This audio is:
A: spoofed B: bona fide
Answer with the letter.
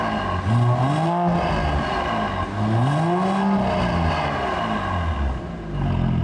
B